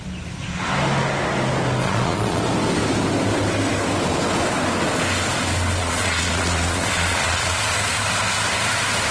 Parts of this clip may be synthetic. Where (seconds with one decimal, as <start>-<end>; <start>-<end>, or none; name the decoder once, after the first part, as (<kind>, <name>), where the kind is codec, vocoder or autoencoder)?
1.8-2.4 (vocoder, Vocos); 5.8-7.6

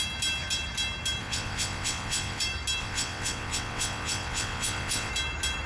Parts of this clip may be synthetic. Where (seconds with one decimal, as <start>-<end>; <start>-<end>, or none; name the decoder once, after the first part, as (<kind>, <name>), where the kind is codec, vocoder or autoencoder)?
1.2-2.4 (vocoder, WaveNeXt); 2.8-5.1

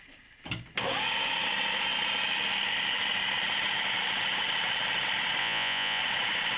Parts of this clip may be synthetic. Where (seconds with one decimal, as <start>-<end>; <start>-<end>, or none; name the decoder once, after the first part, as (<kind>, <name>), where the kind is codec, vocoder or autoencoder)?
5.4-6.0 (vocoder, Vocos)

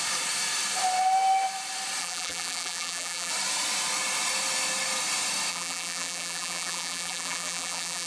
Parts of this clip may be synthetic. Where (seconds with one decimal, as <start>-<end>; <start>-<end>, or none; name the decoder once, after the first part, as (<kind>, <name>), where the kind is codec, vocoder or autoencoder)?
2.0-3.3 (vocoder, BigVGAN v2); 5.5-8.1

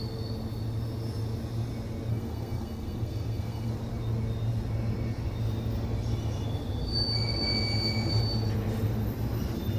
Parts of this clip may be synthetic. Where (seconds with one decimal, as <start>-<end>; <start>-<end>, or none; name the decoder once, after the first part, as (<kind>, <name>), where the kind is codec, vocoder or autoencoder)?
2.1-3.7 (codec, SNAC)

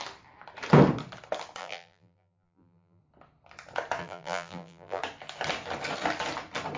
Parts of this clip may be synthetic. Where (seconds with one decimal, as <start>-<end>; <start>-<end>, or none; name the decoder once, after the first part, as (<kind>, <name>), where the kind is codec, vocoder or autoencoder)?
1.6-3.0 (vocoder, BigVGAN v2); 4.0-5.0